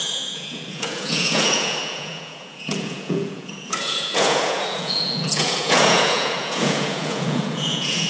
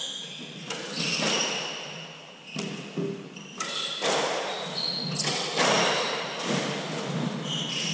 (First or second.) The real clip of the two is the second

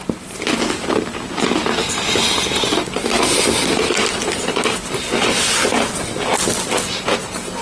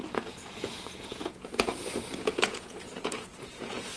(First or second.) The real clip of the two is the first